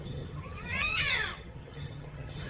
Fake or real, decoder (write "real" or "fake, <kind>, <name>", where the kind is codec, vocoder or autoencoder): fake, vocoder, HiFi-GAN